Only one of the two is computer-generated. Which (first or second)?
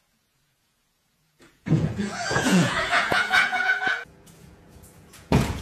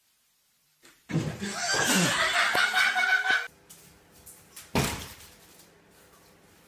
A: first